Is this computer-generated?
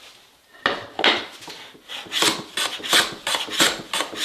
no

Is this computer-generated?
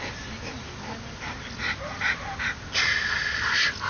no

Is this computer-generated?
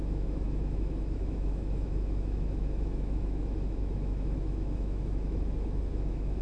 yes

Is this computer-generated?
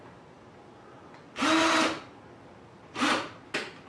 no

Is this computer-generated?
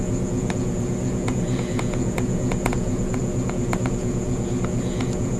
yes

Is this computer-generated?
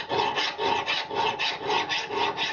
no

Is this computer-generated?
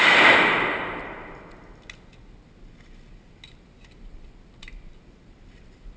no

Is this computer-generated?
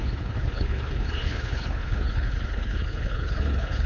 yes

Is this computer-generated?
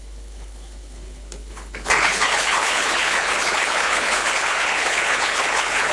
yes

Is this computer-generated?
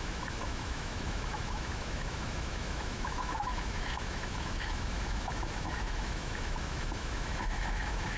yes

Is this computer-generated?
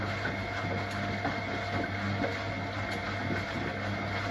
no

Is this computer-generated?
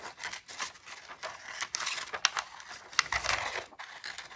no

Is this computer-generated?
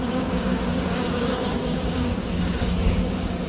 yes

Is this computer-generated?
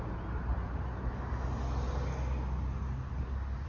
no